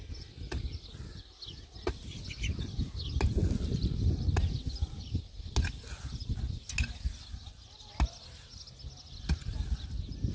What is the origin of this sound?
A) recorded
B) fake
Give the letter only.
A